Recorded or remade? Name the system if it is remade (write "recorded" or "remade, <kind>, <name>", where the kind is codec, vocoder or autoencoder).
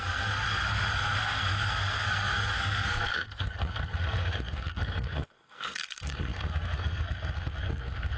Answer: remade, codec, SNAC